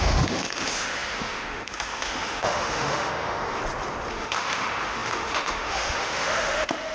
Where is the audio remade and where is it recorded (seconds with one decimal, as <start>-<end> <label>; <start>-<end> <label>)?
0.0-3.6 remade; 3.6-4.1 recorded; 4.1-6.9 remade